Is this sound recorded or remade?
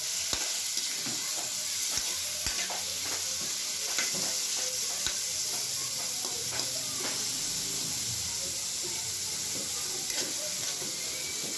recorded